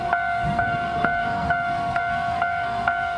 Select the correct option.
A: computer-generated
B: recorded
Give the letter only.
A